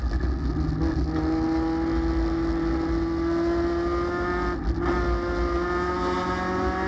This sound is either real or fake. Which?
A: real